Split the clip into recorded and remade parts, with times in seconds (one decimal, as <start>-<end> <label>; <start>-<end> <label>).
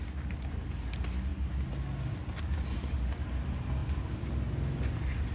0.0-5.3 recorded